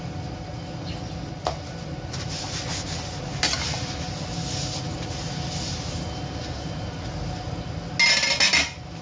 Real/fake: real